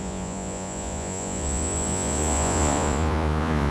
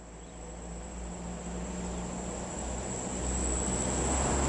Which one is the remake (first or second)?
first